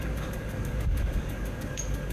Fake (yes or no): yes